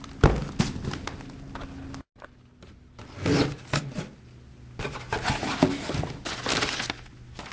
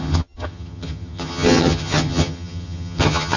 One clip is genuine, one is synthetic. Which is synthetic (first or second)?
second